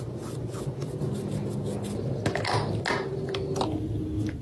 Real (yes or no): yes